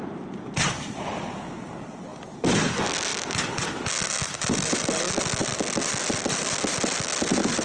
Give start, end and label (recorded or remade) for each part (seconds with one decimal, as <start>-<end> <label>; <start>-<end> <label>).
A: 0.0-2.1 recorded; 2.1-2.7 remade; 2.7-7.6 recorded